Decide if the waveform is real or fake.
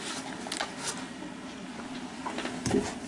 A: real